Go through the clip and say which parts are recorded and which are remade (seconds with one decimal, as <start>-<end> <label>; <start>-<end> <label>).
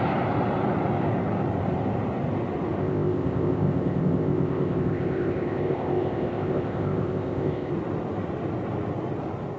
0.0-2.8 recorded; 2.8-7.7 remade; 7.7-9.6 recorded